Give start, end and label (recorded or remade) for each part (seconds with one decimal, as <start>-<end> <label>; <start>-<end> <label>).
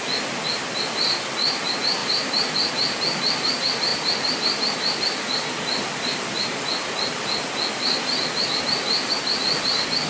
0.0-10.1 recorded